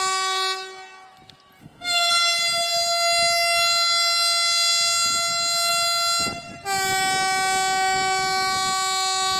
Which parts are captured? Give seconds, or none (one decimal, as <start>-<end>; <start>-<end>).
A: 0.0-1.6; 2.1-9.4